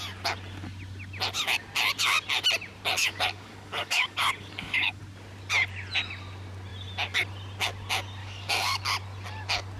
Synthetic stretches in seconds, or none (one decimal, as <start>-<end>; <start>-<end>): 3.0-5.0; 8.2-8.8